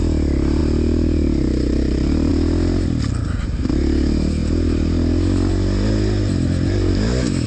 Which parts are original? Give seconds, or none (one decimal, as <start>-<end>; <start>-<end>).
0.0-7.5